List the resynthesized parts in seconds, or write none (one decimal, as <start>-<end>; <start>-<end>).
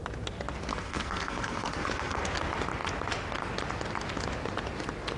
0.7-2.2